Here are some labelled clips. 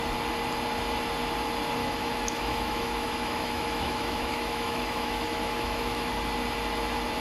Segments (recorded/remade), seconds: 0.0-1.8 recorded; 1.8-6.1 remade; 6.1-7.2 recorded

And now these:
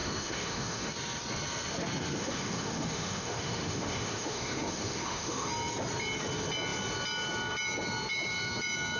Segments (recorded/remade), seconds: 0.0-0.9 remade; 0.9-2.2 recorded; 2.2-5.5 remade; 5.5-9.0 recorded

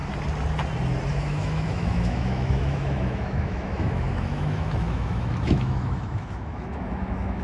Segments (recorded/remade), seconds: 0.0-1.1 recorded; 1.1-7.4 remade

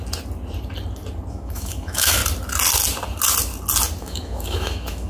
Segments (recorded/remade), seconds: 0.0-1.3 recorded; 1.3-2.2 remade; 2.2-4.0 recorded; 4.0-5.1 remade

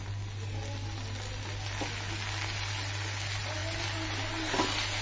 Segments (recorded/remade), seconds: 0.0-5.0 recorded

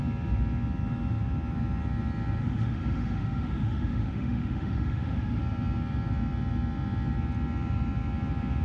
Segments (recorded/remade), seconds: 0.0-2.4 recorded; 2.4-5.4 remade; 5.4-8.6 recorded